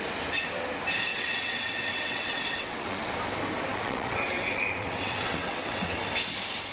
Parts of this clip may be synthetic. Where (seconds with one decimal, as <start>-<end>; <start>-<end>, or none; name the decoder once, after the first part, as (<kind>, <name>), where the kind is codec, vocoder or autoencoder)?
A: 1.1-3.1 (vocoder, WaveNeXt); 3.7-6.0